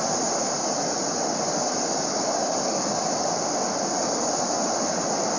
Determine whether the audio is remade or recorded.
recorded